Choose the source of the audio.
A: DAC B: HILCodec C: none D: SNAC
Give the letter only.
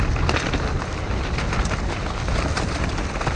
C